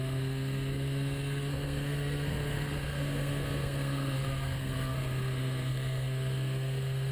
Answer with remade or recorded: remade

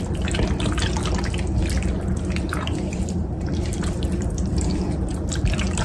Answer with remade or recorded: remade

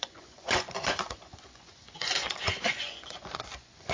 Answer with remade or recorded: remade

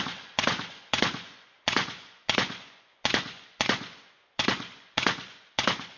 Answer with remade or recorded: remade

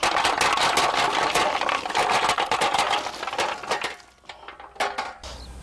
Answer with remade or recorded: recorded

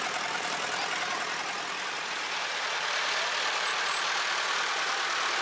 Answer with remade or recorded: recorded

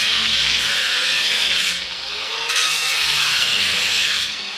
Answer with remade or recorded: remade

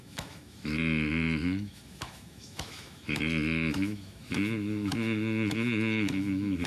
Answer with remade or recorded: remade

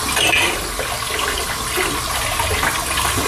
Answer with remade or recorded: recorded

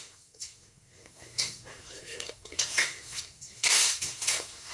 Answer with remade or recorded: remade